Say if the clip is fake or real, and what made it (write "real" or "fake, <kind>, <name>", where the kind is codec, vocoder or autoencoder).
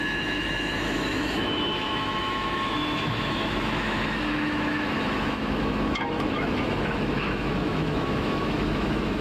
fake, autoencoder, DAC-VAE